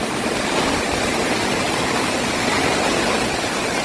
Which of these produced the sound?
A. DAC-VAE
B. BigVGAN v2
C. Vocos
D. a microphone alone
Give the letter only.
D